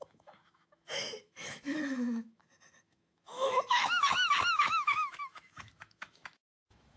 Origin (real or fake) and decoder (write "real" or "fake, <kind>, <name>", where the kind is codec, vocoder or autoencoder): fake, autoencoder, DAC-VAE